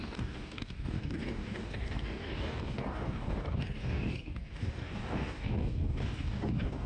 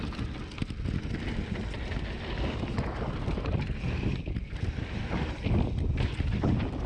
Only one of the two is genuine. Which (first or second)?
second